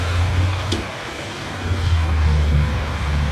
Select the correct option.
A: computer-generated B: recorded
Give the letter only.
A